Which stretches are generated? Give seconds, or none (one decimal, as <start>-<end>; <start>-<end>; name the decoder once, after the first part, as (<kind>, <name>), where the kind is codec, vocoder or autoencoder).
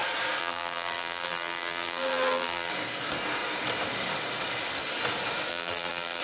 0.4-2.7 (vocoder, BigVGAN v2); 5.5-6.2